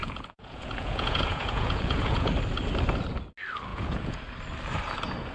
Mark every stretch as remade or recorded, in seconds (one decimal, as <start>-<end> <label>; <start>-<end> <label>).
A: 0.0-2.3 remade; 2.3-3.7 recorded; 3.7-4.2 remade; 4.2-5.3 recorded